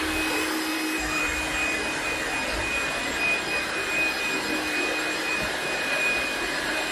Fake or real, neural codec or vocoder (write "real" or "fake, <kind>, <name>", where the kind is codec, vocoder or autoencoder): fake, vocoder, BigVGAN v2